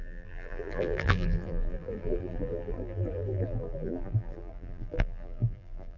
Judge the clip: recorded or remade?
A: remade